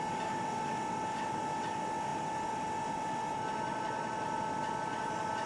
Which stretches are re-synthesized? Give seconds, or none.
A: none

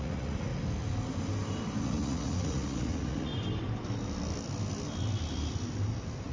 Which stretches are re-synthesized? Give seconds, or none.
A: 0.0-0.5 (vocoder, Vocos); 1.8-3.3

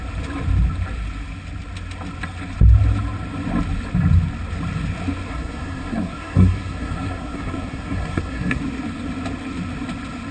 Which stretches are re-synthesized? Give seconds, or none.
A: 5.3-8.6 (codec, SNAC)

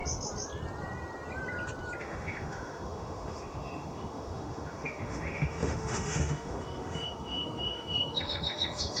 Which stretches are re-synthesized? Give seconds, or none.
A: 2.0-9.0 (autoencoder, DAC-VAE)

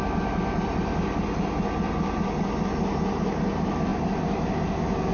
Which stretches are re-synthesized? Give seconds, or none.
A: 3.9-4.4 (vocoder, BigVGAN v2)

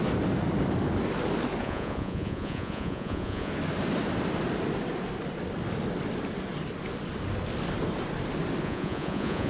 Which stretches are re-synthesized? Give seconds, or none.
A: 1.6-3.5 (vocoder, Vocos); 8.6-9.5

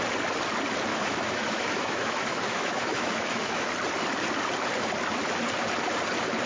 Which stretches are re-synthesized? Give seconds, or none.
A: 0.9-3.7 (autoencoder, DAC-VAE)